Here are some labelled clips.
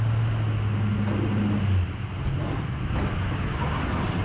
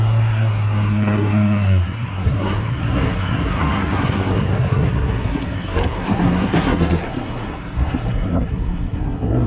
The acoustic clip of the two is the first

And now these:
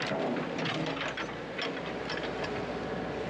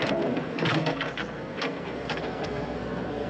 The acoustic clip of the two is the first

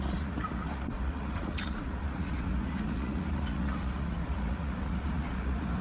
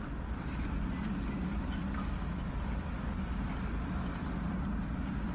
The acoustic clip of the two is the second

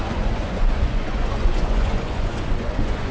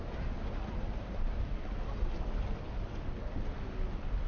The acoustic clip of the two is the second